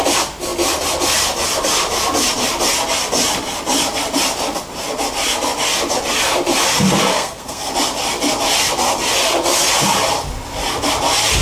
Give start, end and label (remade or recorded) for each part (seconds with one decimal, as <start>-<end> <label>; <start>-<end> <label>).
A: 0.0-7.1 recorded; 7.1-7.7 remade; 7.7-11.4 recorded